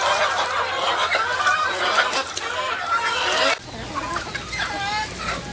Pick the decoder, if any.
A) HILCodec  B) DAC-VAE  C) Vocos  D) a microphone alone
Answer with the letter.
D